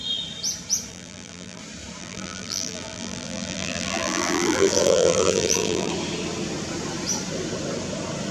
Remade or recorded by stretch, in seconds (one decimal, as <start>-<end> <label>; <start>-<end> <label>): 0.0-0.9 recorded; 0.9-1.6 remade; 1.6-2.0 recorded; 2.0-5.9 remade; 5.9-8.3 recorded